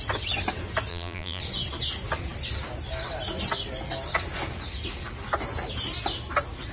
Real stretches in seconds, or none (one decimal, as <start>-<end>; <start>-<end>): 0.0-0.9; 1.4-6.7